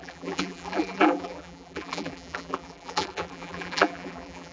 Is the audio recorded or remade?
remade